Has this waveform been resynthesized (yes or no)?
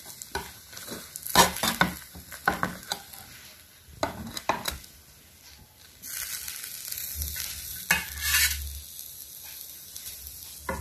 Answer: no